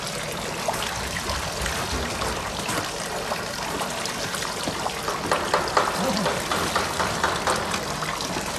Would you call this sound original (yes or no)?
yes